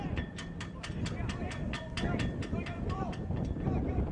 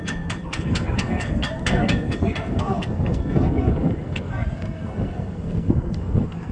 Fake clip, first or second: second